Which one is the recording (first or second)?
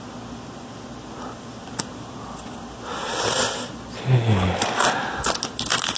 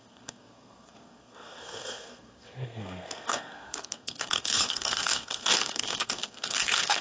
first